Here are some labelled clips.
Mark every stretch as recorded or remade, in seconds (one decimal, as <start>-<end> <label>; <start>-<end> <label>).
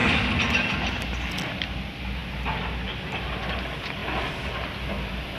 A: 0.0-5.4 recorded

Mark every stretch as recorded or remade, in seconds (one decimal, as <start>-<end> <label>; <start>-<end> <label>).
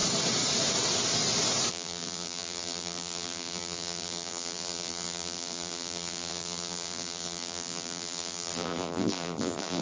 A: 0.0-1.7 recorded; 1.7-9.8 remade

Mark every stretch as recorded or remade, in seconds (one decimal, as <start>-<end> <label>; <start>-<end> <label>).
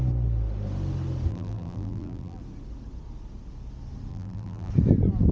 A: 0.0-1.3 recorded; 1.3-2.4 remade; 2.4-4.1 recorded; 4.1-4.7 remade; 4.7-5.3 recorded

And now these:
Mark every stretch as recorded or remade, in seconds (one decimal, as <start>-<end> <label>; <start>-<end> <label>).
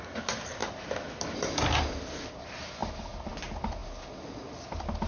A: 0.0-5.1 recorded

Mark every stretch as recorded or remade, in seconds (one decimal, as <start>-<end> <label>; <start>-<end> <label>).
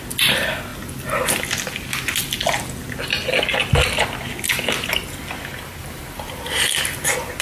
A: 0.0-5.8 recorded; 5.8-6.7 remade; 6.7-7.4 recorded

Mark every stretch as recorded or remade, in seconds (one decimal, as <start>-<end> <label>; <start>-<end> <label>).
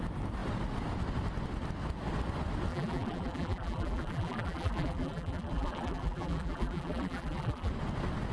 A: 0.0-2.7 recorded; 2.7-7.7 remade; 7.7-8.3 recorded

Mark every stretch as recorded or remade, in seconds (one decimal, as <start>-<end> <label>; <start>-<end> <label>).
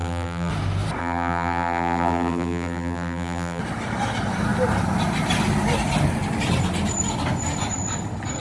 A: 0.0-0.5 remade; 0.5-1.0 recorded; 1.0-3.6 remade; 3.6-8.4 recorded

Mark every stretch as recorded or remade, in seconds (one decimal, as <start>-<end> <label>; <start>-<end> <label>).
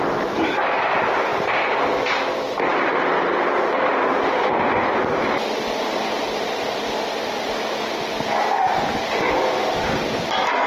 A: 0.0-10.7 recorded